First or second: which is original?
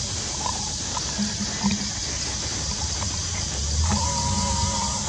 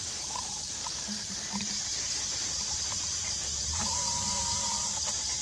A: first